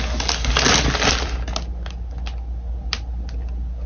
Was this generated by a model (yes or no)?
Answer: no